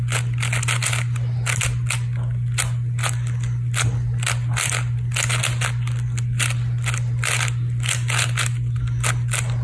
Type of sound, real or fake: real